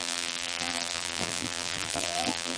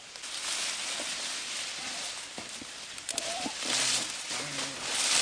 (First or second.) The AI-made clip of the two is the first